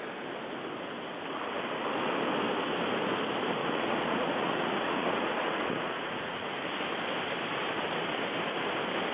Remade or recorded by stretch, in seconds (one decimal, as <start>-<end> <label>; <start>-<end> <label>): 0.0-3.6 recorded; 3.6-6.4 remade; 6.4-9.1 recorded